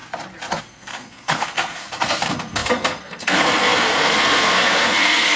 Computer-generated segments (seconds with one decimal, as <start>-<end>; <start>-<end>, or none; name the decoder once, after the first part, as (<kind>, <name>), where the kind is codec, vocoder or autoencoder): 0.6-5.4 (codec, SNAC)